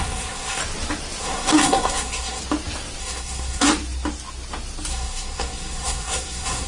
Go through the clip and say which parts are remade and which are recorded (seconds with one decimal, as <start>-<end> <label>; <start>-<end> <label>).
0.0-0.6 remade; 0.6-1.2 recorded; 1.2-2.4 remade; 2.4-3.0 recorded; 3.0-3.7 remade; 3.7-4.9 recorded; 4.9-6.7 remade